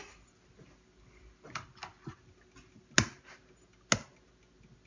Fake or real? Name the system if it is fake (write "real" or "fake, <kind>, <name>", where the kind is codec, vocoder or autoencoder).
real